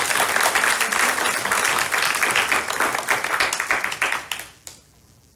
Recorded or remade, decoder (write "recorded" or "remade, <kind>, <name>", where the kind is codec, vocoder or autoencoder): recorded